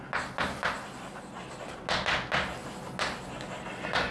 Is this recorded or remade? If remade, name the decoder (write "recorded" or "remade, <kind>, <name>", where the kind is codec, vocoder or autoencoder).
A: recorded